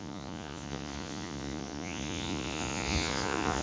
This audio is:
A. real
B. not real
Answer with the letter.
B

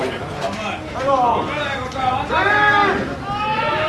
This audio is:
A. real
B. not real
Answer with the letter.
A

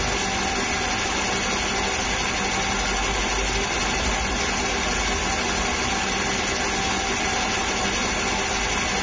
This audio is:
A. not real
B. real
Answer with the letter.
B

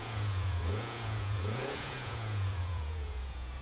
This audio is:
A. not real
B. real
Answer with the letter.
A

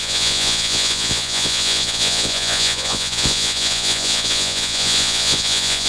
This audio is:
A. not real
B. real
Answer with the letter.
A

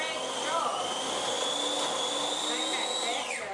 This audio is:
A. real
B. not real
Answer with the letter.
A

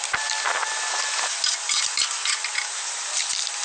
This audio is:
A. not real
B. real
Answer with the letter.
B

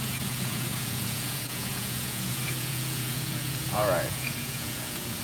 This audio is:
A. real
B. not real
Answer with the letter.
B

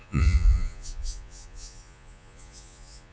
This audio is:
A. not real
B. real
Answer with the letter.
A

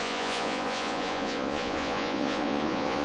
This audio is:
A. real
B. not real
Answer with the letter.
B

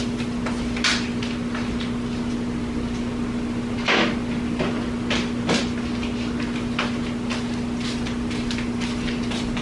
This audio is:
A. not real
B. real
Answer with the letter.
B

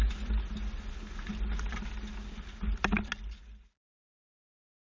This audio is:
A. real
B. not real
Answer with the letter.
A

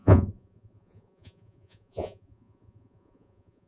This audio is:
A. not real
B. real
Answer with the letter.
A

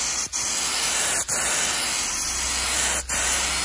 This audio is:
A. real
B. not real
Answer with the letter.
A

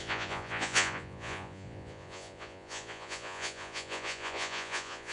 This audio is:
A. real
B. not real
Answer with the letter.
B